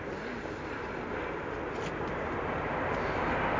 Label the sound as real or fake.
real